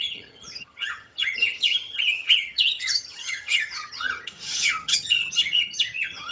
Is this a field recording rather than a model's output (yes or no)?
no